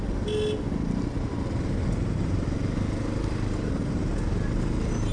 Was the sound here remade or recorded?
recorded